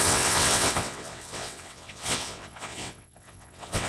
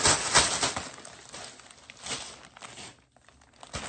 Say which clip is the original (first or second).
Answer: second